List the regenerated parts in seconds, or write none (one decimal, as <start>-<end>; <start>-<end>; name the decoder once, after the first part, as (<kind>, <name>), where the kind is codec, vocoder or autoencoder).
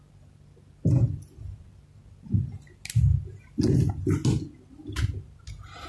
none